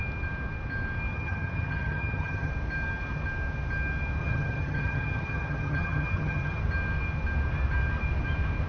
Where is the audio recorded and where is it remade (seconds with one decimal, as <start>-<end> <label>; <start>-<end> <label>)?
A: 0.0-1.1 recorded; 1.1-2.5 remade; 2.5-4.2 recorded; 4.2-6.6 remade; 6.6-8.7 recorded